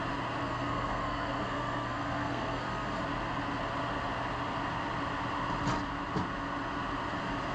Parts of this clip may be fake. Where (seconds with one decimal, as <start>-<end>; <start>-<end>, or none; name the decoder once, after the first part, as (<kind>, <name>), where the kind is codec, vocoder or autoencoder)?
0.4-3.0 (codec, SNAC)